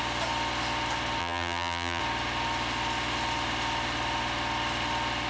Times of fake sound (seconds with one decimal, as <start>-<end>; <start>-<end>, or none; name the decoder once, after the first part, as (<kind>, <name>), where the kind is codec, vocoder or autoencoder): 1.2-2.0 (vocoder, BigVGAN v2)